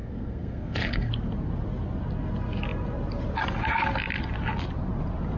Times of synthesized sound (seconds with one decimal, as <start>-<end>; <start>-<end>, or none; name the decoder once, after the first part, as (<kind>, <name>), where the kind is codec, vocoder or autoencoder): 0.0-1.1 (codec, SNAC)